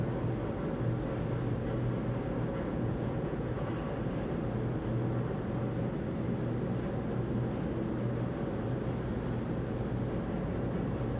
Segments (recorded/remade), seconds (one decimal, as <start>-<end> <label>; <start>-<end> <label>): 0.0-2.7 recorded; 2.7-3.7 remade; 3.7-11.2 recorded